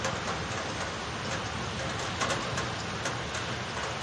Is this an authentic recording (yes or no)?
yes